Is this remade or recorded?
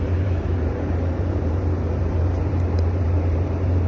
remade